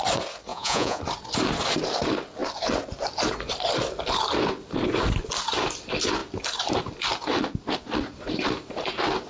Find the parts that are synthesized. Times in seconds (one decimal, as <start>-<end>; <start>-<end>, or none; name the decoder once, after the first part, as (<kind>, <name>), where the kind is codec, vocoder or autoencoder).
0.5-1.0 (vocoder, Vocos)